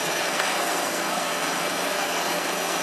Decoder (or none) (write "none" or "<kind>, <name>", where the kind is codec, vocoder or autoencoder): codec, SNAC